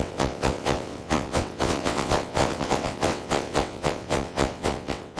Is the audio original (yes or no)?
no